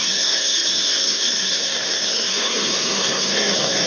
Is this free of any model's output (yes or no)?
no